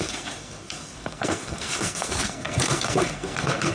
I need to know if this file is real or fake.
fake